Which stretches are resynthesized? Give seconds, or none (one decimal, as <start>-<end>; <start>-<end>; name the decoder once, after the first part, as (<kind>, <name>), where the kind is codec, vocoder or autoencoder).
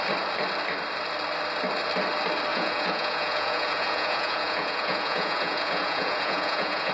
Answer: 2.5-6.9 (vocoder, Vocos)